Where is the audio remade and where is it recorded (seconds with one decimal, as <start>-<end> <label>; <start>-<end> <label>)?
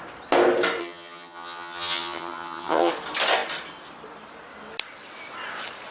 0.0-0.8 recorded; 0.8-2.9 remade; 2.9-5.9 recorded